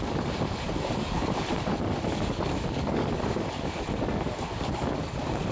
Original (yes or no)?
no